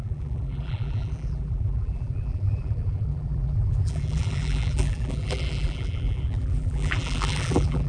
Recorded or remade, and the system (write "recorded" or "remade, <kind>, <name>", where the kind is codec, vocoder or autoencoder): remade, vocoder, BigVGAN v2